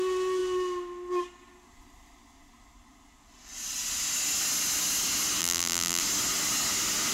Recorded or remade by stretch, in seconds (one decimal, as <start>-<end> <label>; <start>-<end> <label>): 0.0-5.4 recorded; 5.4-6.0 remade; 6.0-7.1 recorded